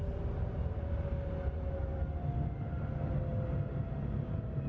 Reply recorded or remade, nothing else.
recorded